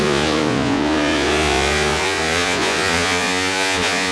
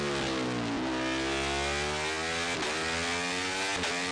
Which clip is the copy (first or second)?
first